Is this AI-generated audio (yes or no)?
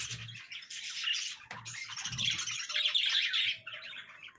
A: no